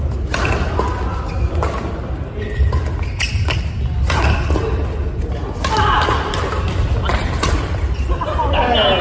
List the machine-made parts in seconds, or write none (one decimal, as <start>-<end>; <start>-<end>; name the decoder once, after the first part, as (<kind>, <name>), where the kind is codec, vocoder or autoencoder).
1.1-2.1 (vocoder, BigVGAN v2); 7.1-8.6